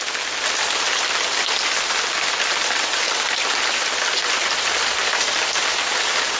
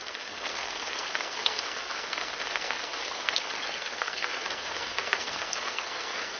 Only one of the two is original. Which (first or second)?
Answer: first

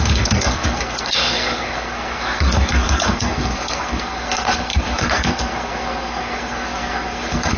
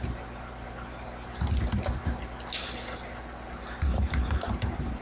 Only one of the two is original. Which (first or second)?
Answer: second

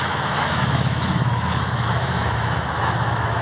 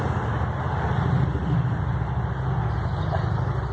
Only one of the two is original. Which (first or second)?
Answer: second